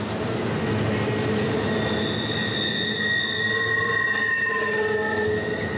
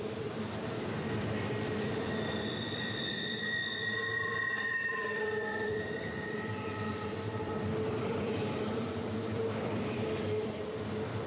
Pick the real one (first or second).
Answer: first